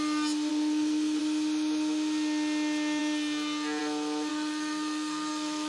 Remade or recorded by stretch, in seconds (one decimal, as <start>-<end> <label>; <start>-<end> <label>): 0.0-0.5 recorded; 0.5-1.2 remade; 1.2-4.3 recorded; 4.3-5.7 remade